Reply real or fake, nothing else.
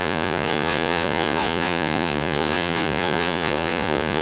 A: fake